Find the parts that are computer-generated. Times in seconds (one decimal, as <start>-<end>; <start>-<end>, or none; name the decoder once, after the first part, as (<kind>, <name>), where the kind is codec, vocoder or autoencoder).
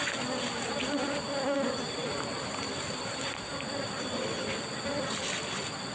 none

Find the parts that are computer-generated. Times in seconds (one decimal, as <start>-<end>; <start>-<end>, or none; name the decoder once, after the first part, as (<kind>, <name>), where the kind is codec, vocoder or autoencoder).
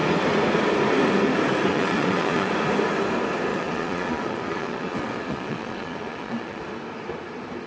1.7-2.5 (vocoder, Vocos); 3.5-6.6